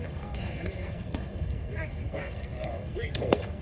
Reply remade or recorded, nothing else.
remade